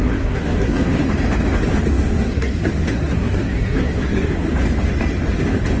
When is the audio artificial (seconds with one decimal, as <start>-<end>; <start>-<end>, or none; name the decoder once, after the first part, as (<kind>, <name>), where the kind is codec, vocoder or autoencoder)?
0.0-1.0 (codec, SNAC); 1.9-4.5

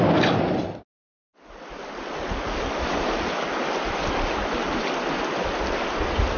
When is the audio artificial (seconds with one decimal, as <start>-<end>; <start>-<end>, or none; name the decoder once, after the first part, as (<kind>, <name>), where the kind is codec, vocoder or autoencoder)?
none

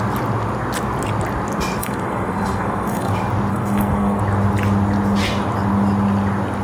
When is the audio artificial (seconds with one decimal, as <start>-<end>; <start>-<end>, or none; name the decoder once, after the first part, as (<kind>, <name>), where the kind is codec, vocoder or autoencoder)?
1.8-3.1 (codec, SNAC); 3.5-4.2

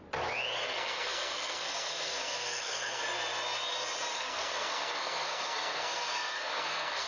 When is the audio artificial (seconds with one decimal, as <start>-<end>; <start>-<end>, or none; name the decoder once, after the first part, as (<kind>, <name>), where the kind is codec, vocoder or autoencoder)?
0.6-3.0 (codec, SNAC); 4.1-7.1

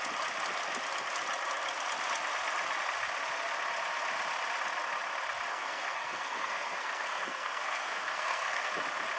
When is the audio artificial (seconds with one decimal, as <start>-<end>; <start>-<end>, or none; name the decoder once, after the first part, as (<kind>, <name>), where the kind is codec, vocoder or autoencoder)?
5.5-8.7 (codec, SNAC)

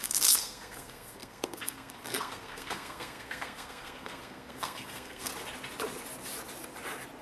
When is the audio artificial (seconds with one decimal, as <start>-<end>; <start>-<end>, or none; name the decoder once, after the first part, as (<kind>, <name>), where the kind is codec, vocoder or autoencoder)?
0.0-5.3 (codec, SNAC)

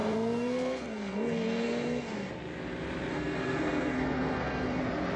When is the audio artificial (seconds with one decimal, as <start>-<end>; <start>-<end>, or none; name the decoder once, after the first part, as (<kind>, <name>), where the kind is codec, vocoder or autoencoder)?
0.0-2.3 (codec, SNAC); 3.1-4.8